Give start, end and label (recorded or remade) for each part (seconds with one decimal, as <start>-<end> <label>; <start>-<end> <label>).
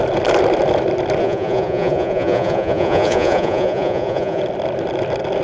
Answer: 0.0-1.2 recorded; 1.2-4.4 remade; 4.4-5.4 recorded